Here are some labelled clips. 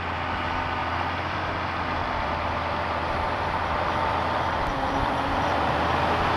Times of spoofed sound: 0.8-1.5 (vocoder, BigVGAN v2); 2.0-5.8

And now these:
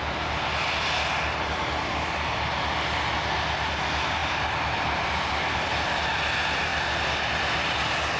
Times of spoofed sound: none

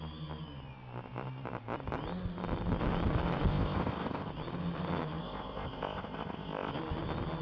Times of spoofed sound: 3.5-4.3 (codec, ZipCodec); 5.2-6.7

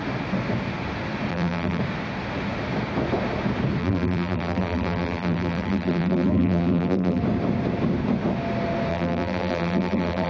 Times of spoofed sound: 1.3-1.8 (vocoder, BigVGAN v2); 3.8-7.2; 8.9-10.3

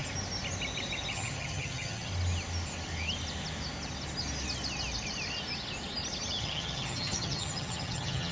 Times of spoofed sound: 1.1-2.1 (vocoder, HiFi-GAN); 6.4-8.3

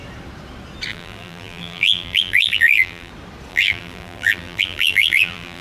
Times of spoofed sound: 0.9-3.1 (vocoder, BigVGAN v2); 3.5-5.6

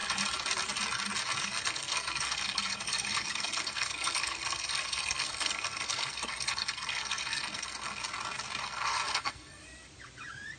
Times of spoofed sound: 1.4-8.0 (codec, SNAC); 8.6-9.6